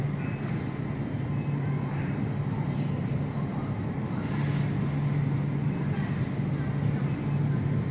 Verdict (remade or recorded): recorded